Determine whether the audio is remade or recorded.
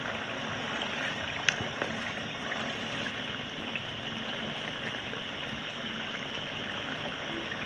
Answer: recorded